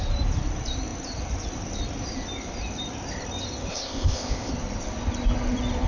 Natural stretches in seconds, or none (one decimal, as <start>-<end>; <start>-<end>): 0.0-3.7; 4.5-5.9